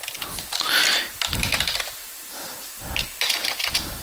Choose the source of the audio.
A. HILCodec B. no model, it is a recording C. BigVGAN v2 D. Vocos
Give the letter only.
B